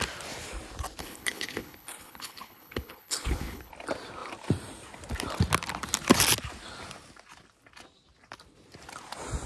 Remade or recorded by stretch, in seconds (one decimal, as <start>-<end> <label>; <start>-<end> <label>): 0.0-1.0 recorded; 1.0-3.7 remade; 3.7-9.5 recorded